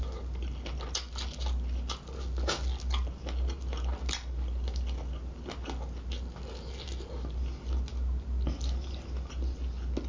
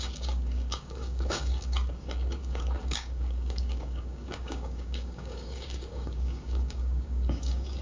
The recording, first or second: first